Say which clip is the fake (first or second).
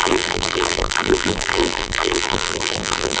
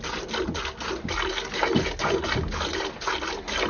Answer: first